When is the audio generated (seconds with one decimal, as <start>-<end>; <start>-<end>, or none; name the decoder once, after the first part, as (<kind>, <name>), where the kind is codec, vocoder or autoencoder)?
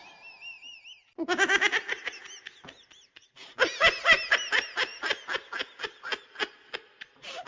none